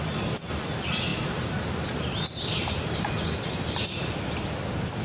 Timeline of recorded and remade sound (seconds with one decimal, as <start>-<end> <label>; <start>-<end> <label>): 0.0-1.1 recorded; 1.1-3.1 remade; 3.1-5.0 recorded